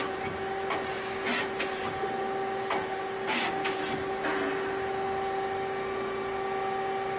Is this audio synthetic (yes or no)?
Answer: no